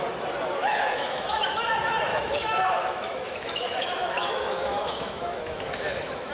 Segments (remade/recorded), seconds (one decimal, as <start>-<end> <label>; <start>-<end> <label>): 0.0-0.6 recorded; 0.6-1.6 remade; 1.6-2.1 recorded; 2.1-6.3 remade

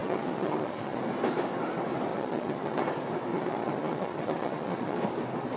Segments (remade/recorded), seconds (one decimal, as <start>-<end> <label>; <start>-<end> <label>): 0.0-1.0 remade; 1.0-2.1 recorded; 2.1-2.8 remade; 2.8-3.3 recorded; 3.3-5.0 remade; 5.0-5.6 recorded

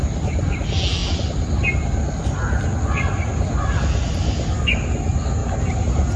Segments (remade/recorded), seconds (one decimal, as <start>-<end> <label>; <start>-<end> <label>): 0.0-5.4 recorded; 5.4-6.2 remade

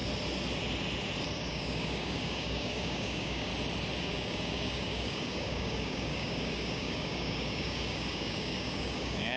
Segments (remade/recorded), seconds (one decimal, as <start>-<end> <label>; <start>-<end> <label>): 0.0-1.5 recorded; 1.5-3.5 remade; 3.5-4.0 recorded; 4.0-9.4 remade